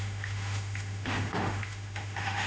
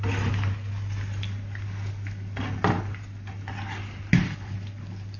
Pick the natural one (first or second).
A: second